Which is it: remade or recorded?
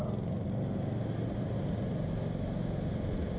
recorded